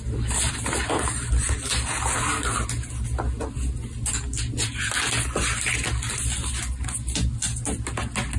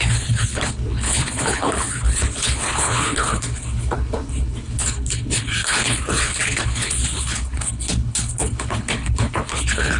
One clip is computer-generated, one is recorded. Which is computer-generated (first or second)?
second